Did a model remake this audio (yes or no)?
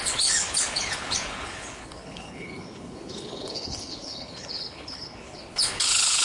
yes